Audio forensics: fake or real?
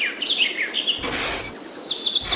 real